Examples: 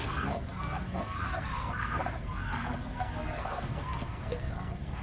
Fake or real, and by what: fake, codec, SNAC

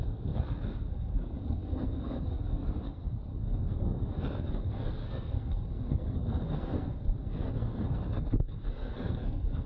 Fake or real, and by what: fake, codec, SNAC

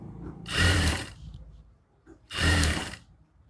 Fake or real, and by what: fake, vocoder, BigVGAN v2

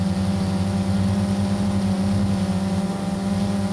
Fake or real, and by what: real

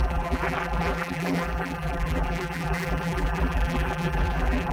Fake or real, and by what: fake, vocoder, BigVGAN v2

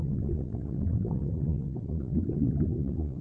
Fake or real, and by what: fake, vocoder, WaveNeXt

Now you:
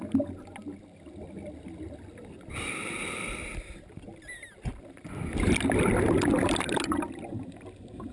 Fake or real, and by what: real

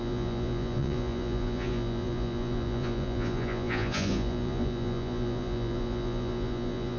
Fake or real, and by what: fake, vocoder, Vocos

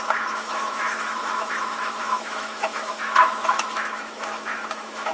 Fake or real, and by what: fake, autoencoder, DAC-VAE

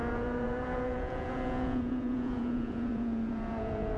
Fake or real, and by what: fake, vocoder, Vocos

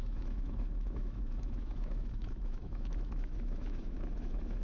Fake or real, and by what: fake, autoencoder, DAC-VAE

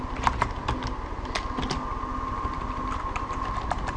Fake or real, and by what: real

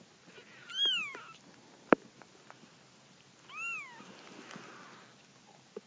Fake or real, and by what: real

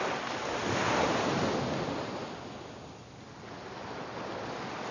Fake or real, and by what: real